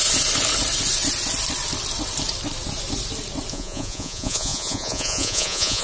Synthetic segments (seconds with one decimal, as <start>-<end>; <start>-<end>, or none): 3.5-5.8

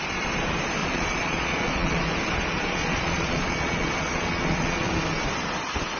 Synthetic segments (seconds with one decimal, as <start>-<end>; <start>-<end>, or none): 0.8-2.0; 2.8-4.9

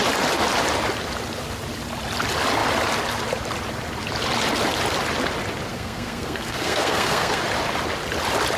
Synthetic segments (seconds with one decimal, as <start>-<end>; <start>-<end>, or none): 5.7-7.4

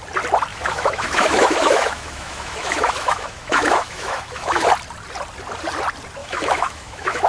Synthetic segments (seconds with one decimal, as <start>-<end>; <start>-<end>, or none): 0.5-4.7; 6.2-7.3

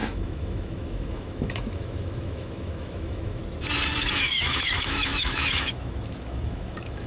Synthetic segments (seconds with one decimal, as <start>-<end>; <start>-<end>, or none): 0.0-3.4; 4.0-7.1

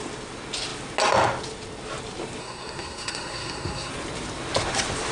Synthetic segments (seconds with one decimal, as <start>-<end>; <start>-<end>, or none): 2.4-3.9